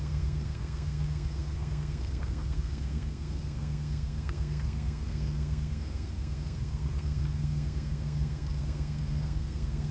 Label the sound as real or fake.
fake